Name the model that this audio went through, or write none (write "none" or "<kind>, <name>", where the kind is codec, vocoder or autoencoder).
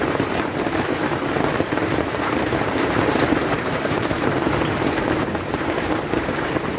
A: vocoder, BigVGAN v2